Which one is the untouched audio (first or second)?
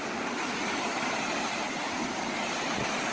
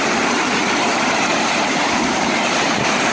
first